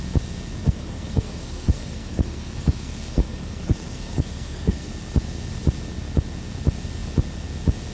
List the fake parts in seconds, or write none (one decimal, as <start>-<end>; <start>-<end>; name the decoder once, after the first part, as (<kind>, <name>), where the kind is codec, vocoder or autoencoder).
0.6-4.9 (codec, SNAC)